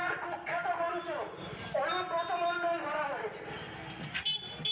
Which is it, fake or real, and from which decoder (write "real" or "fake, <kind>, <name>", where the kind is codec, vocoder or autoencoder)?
real